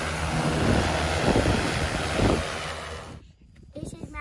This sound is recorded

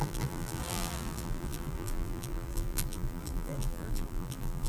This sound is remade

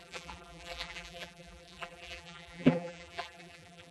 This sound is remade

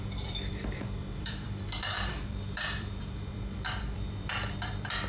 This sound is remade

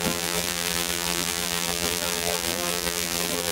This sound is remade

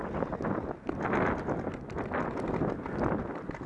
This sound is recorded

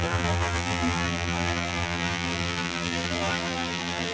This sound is remade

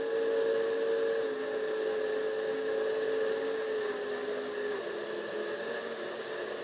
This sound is recorded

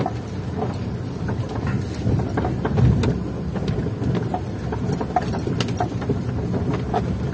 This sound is recorded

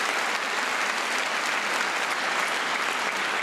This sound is recorded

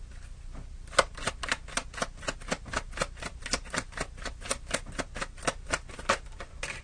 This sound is recorded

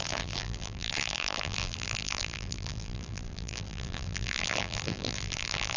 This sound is remade